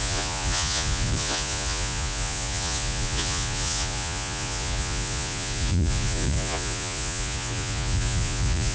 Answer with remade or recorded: remade